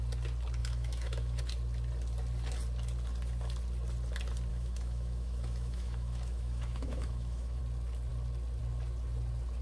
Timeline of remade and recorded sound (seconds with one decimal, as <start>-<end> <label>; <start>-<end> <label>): 0.0-0.6 recorded; 0.6-1.4 remade; 1.4-4.5 recorded; 4.5-7.6 remade; 7.6-9.6 recorded